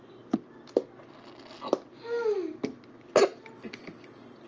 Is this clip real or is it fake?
real